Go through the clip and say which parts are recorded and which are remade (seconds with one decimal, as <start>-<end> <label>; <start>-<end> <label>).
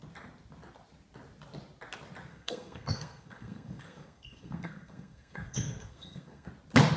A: 0.0-2.3 recorded; 2.3-6.5 remade; 6.5-7.0 recorded